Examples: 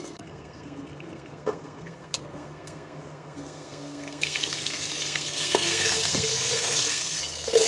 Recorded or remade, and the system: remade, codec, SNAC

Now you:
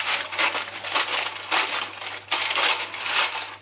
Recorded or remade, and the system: recorded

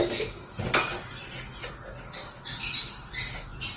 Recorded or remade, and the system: recorded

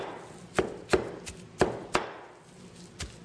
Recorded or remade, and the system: recorded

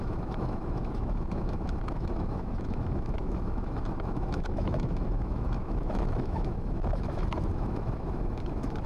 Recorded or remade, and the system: remade, autoencoder, DAC-VAE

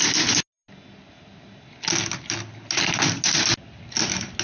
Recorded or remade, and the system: recorded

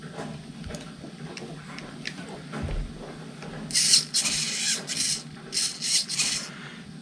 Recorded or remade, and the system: recorded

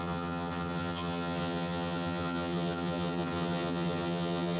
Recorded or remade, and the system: remade, vocoder, HiFi-GAN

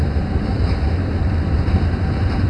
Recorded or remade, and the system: remade, vocoder, BigVGAN v2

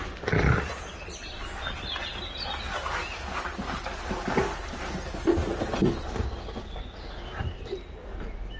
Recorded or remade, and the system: recorded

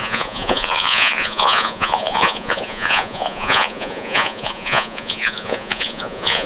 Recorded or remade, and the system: remade, vocoder, Vocos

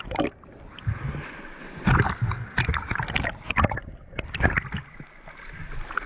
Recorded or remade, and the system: recorded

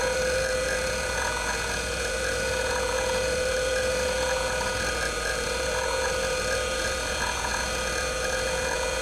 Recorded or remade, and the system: remade, vocoder, Vocos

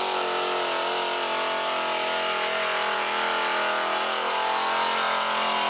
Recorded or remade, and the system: recorded